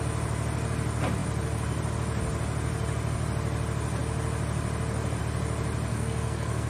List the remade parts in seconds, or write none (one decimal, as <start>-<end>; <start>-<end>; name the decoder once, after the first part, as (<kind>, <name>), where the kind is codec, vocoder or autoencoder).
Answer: 5.9-6.7 (codec, SNAC)